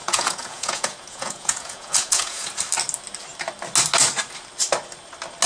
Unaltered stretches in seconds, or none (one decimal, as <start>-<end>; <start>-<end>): 2.5-5.5